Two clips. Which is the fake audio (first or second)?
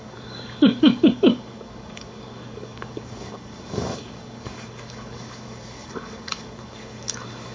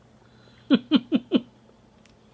first